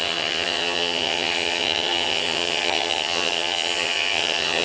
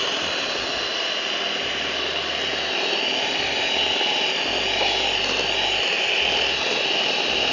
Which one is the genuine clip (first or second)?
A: second